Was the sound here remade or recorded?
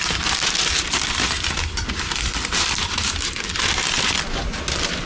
recorded